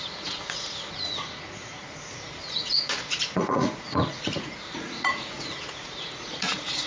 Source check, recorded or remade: remade